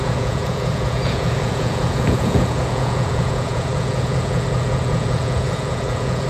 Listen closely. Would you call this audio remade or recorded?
remade